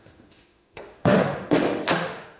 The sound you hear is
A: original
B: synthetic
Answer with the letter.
B